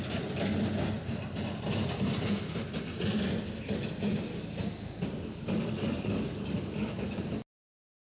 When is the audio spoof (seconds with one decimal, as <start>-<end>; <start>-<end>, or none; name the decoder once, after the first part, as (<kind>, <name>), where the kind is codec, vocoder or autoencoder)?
4.3-7.2 (codec, DAC)